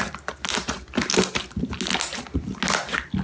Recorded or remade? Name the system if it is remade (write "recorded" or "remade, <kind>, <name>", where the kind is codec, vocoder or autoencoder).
recorded